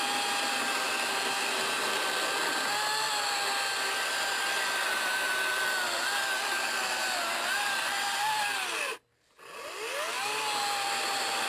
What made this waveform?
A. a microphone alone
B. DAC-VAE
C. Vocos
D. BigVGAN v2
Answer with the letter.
A